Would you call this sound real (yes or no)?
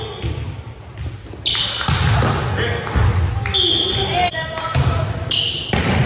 yes